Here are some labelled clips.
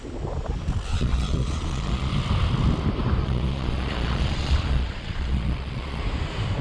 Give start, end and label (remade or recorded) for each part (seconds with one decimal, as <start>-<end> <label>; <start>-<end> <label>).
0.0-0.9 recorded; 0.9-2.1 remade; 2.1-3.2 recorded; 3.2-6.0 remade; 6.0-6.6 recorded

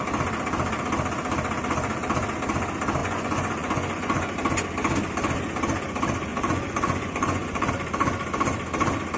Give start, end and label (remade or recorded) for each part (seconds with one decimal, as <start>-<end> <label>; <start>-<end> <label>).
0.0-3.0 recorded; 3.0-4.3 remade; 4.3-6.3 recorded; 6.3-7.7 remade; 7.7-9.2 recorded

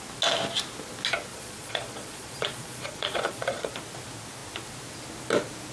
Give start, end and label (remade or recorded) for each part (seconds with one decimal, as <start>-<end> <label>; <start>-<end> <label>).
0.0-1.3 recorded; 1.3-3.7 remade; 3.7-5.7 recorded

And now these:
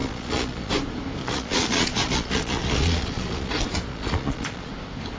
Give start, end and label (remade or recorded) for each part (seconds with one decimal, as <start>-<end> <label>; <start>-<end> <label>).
0.0-0.7 remade; 0.7-1.2 recorded; 1.2-3.5 remade; 3.5-3.9 recorded; 3.9-4.7 remade; 4.7-5.2 recorded

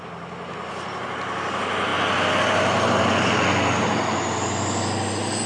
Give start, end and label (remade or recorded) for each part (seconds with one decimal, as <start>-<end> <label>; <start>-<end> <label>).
0.0-5.5 recorded

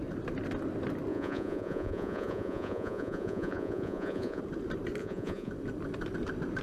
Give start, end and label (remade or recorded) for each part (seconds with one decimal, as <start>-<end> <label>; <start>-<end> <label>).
0.0-1.1 recorded; 1.1-4.4 remade; 4.4-5.0 recorded; 5.0-5.5 remade; 5.5-6.6 recorded